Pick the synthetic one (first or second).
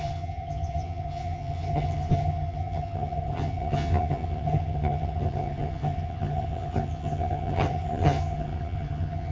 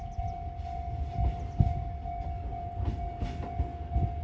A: first